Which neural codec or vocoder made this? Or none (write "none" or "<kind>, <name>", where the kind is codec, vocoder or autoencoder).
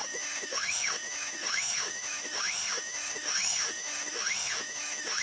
autoencoder, DAC-VAE